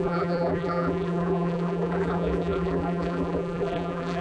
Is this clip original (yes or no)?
no